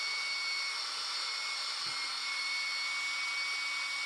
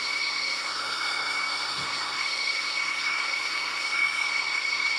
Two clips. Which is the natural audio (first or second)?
first